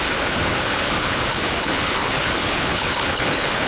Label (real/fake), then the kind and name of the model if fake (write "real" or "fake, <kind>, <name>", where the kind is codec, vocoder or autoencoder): fake, codec, HILCodec